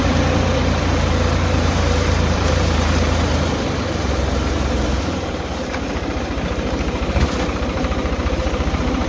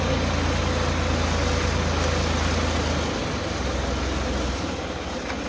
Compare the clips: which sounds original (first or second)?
second